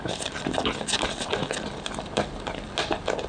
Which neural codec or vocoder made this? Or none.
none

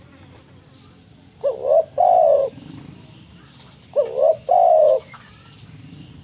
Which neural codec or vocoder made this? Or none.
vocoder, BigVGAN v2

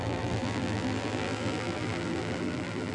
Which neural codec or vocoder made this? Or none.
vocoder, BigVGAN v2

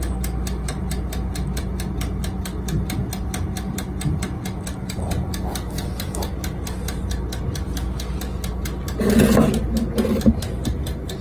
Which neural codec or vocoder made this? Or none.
none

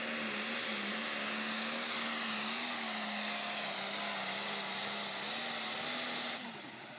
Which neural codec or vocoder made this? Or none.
none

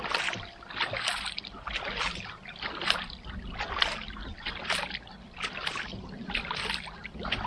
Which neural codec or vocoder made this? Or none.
none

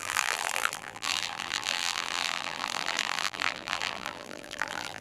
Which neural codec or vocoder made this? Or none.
vocoder, BigVGAN v2